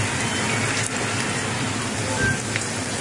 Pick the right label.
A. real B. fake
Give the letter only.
A